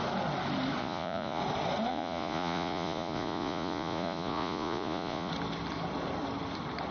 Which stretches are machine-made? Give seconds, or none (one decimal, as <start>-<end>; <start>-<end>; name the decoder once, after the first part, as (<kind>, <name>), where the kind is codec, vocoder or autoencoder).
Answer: 0.8-1.4 (vocoder, Vocos); 1.9-5.3